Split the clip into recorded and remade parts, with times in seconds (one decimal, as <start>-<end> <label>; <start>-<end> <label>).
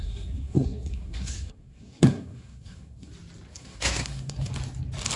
0.0-3.1 remade; 3.1-3.5 recorded; 3.5-4.5 remade; 4.5-5.2 recorded